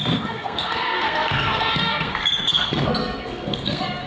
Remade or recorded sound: remade